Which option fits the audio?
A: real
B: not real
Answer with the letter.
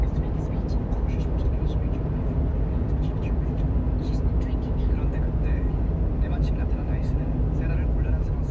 A